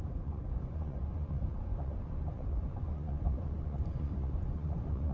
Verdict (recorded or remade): remade